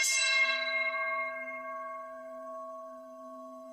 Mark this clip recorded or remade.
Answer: remade